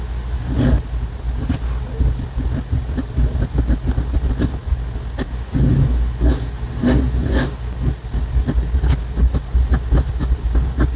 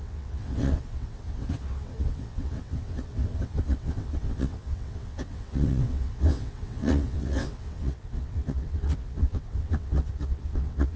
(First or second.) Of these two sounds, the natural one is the first